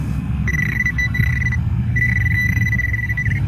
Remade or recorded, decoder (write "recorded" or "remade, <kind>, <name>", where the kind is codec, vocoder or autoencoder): remade, codec, SNAC